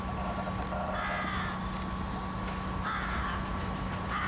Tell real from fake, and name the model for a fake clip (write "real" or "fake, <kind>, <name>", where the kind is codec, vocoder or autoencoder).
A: real